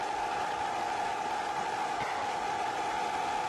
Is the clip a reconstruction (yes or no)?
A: no